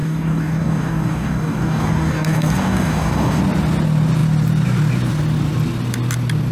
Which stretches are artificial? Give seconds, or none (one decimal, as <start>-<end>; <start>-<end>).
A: 0.0-3.4